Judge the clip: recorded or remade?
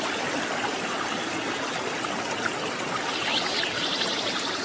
recorded